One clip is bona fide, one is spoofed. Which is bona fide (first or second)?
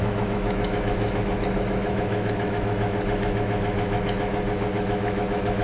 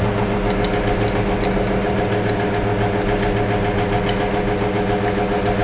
second